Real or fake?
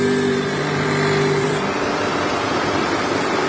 fake